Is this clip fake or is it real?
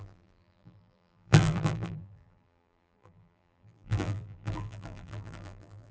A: fake